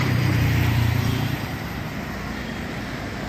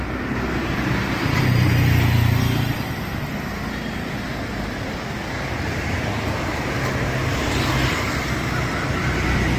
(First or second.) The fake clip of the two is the first